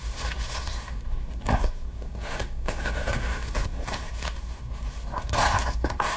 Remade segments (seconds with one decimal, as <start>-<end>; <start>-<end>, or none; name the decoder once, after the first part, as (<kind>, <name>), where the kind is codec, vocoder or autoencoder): 0.0-6.2 (codec, SNAC)